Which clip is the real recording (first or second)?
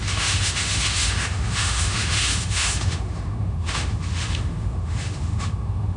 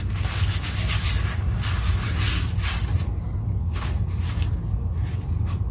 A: second